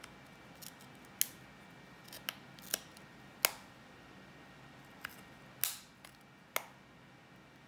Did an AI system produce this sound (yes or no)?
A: no